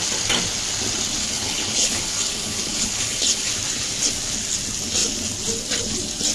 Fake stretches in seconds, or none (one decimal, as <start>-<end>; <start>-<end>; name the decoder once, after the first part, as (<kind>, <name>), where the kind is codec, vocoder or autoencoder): 1.2-3.5 (codec, HILCodec)